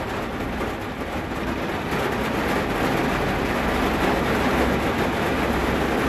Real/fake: real